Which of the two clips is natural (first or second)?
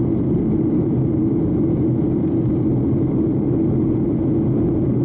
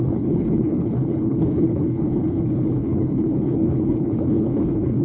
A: first